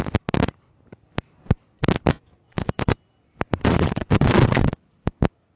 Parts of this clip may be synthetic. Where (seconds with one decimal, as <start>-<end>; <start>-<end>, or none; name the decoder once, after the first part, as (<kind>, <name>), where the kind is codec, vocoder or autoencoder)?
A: 2.3-3.0 (vocoder, Vocos); 3.6-5.6

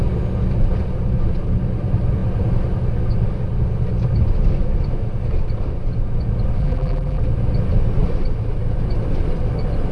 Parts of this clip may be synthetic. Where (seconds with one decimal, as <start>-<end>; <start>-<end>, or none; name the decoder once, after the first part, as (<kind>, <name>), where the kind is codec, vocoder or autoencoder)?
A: 6.6-7.2 (vocoder, BigVGAN v2)

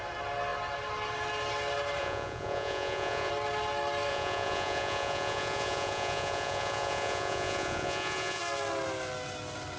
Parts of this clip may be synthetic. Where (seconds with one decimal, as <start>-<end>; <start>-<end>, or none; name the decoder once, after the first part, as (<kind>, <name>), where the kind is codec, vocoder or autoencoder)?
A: 2.0-3.3 (vocoder, Vocos); 4.1-8.4

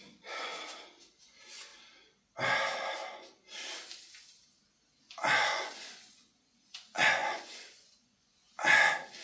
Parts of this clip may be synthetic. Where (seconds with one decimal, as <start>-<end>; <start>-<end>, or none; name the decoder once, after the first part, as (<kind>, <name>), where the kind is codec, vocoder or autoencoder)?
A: 0.0-0.5 (vocoder, Vocos); 1.2-1.7; 5.0-9.2